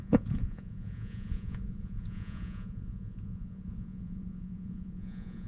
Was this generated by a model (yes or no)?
yes